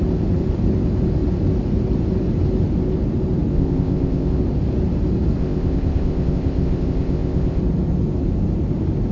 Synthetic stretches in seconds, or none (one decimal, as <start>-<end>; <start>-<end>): 3.5-4.4; 5.4-7.6